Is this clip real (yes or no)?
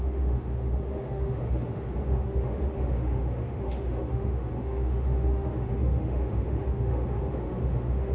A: no